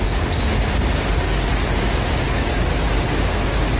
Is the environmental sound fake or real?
real